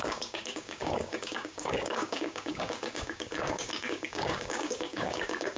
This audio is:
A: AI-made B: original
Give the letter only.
A